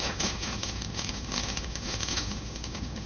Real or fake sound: fake